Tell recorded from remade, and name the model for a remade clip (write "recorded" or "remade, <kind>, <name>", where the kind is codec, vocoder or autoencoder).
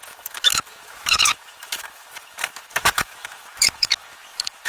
remade, autoencoder, DAC-VAE